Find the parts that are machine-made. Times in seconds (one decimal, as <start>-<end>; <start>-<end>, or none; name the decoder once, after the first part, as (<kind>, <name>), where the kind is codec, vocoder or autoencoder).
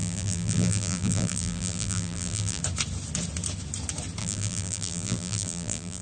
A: 0.0-2.6 (vocoder, BigVGAN v2); 4.2-6.0